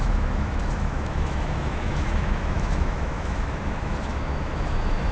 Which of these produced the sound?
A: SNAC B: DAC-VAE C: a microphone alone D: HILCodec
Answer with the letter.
B